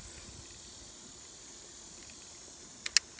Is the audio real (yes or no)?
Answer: yes